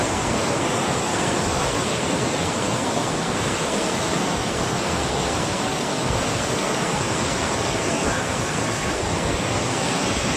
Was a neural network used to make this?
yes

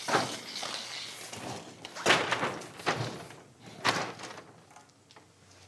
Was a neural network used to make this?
no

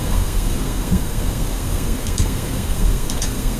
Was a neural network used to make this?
yes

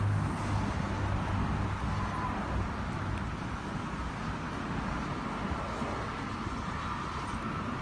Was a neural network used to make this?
no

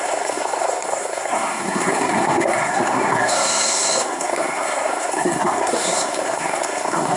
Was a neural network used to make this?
yes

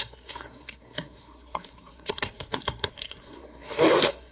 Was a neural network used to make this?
yes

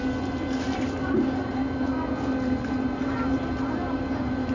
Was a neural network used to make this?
no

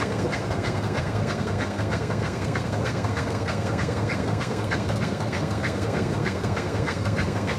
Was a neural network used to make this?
yes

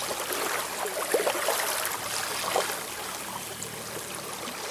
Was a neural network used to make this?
no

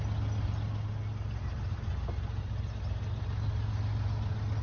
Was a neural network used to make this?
no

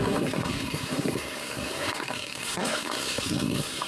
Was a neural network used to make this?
yes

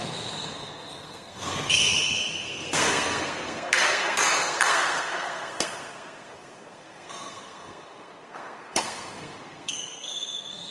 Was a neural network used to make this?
yes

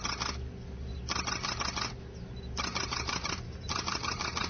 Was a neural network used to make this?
no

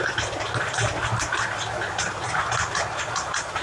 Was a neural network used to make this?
no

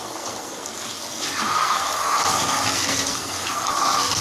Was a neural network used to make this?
yes